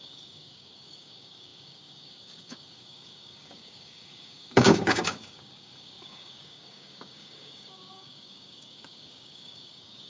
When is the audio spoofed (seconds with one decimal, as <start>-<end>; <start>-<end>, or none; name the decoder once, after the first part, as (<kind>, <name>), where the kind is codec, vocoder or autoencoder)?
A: 0.0-10.1 (codec, DAC)